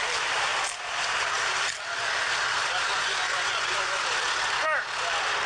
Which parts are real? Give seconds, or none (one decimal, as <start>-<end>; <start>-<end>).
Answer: 0.0-2.9; 4.0-5.5